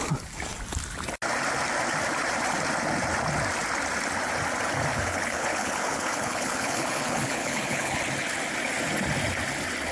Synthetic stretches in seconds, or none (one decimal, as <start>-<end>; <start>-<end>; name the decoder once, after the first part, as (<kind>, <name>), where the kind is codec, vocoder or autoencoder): 4.9-8.0 (codec, HILCodec)